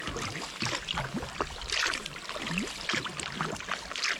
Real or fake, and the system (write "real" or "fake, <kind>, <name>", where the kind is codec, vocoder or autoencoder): real